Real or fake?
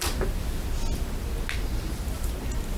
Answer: real